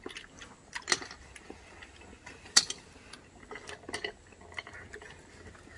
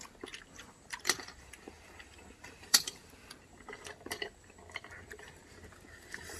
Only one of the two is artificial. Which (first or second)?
second